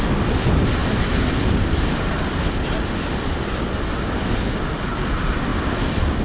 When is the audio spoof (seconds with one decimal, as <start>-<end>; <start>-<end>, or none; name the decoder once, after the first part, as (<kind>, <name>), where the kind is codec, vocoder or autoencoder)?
none